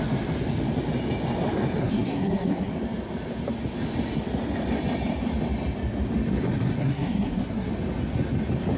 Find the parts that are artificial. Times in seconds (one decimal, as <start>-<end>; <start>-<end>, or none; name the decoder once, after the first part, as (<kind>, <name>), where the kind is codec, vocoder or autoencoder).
1.8-2.7 (codec, SNAC); 6.8-7.7